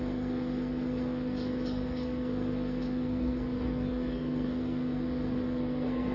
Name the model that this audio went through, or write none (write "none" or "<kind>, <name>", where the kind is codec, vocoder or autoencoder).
codec, SNAC